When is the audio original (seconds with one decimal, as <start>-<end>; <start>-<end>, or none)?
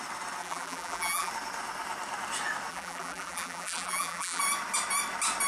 0.0-0.4; 1.3-2.7; 4.4-5.5